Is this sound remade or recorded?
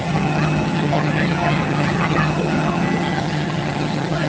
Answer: remade